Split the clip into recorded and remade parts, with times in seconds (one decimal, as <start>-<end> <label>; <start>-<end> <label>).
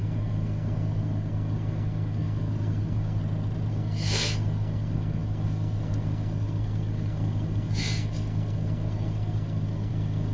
0.0-3.2 remade; 3.2-3.7 recorded; 3.7-10.3 remade